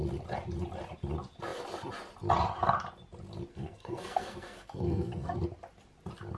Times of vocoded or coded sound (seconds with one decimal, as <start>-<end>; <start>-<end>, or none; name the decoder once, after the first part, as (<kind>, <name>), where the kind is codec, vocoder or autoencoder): 3.5-5.4 (codec, SNAC)